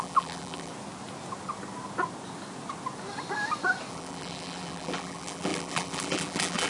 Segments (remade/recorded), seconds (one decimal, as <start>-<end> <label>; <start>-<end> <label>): 0.0-0.7 remade; 0.7-3.9 recorded; 3.9-6.7 remade